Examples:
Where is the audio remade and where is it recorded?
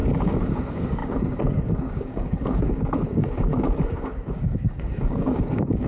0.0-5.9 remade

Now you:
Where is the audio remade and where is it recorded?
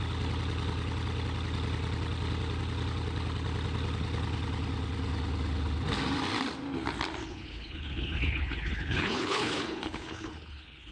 0.0-7.3 recorded; 7.3-10.9 remade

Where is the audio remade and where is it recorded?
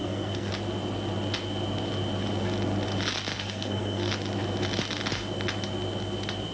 0.0-0.5 remade; 0.5-3.3 recorded; 3.3-4.1 remade; 4.1-6.5 recorded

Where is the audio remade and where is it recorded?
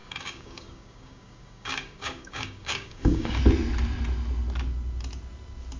0.0-3.4 remade; 3.4-5.8 recorded